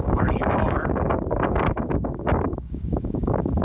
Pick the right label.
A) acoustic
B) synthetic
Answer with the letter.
B